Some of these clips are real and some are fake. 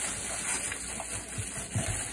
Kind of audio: real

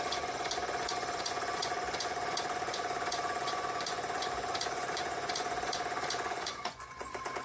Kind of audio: fake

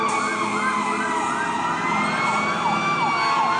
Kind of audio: real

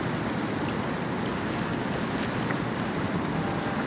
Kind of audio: real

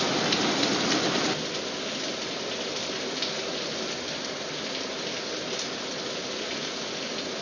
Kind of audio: real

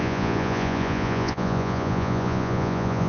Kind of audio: fake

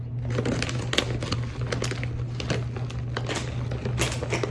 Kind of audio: real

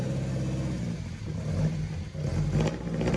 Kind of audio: real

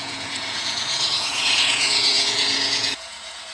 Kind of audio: fake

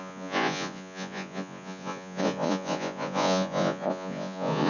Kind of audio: fake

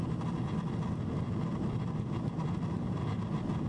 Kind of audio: real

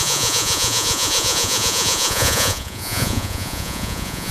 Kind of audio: fake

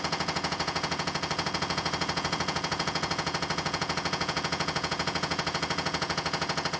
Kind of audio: fake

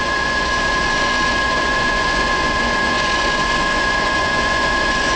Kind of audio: fake